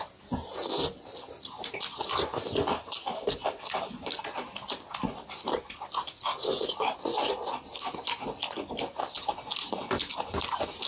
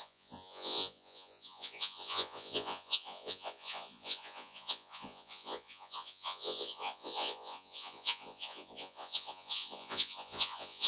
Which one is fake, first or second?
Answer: second